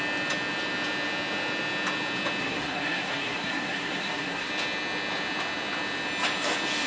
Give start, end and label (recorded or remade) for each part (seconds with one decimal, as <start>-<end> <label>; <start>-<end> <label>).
0.0-2.4 recorded; 2.4-4.5 remade; 4.5-6.9 recorded